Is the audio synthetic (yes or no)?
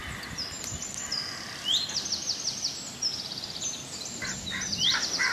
no